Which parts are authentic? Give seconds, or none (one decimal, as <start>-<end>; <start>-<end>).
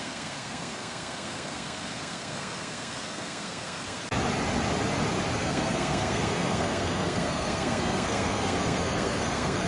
4.0-5.4